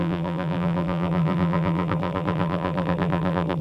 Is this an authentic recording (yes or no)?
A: no